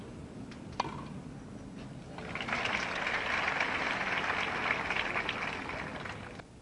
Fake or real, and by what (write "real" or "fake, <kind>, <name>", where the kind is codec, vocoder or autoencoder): real